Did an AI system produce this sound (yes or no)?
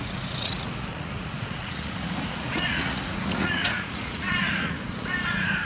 yes